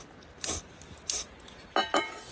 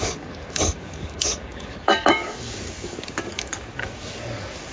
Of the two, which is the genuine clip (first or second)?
first